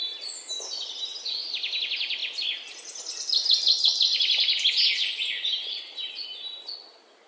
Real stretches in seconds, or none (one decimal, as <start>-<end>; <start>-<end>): 0.0-7.3